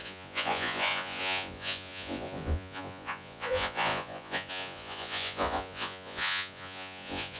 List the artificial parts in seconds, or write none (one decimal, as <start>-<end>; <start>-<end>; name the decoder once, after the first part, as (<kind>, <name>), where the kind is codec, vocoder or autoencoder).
0.0-7.4 (vocoder, Vocos)